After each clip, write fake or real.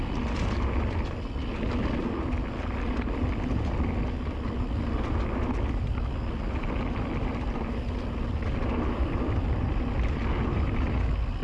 real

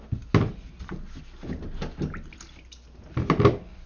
real